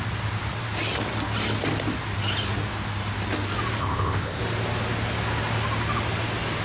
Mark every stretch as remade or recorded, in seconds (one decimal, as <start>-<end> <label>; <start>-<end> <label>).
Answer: 0.0-3.8 recorded; 3.8-4.4 remade; 4.4-6.6 recorded